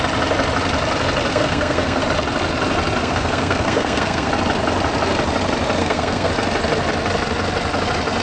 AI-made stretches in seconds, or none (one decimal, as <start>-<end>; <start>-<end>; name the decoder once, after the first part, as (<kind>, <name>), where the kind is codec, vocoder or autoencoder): 1.3-2.0 (codec, SNAC); 3.0-4.3; 5.8-6.3